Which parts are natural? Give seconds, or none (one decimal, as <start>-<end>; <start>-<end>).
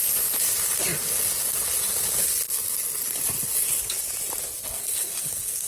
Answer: 0.0-4.6